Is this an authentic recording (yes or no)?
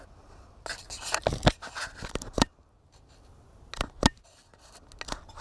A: yes